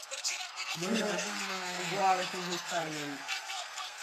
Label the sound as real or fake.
fake